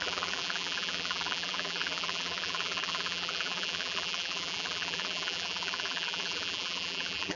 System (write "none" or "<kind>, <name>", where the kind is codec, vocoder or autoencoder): vocoder, BigVGAN v2